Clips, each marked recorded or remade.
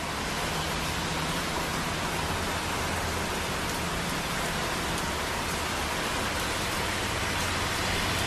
recorded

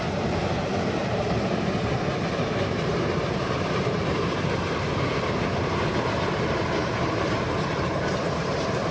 remade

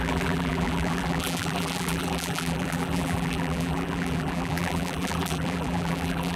remade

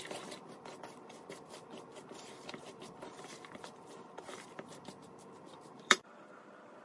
remade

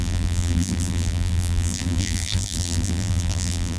remade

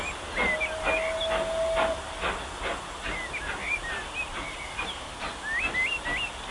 recorded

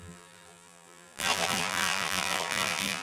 remade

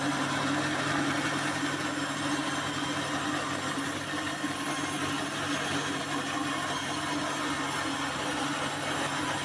recorded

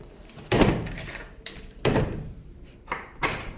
remade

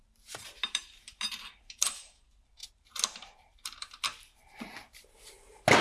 remade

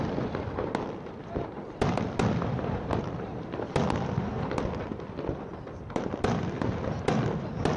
recorded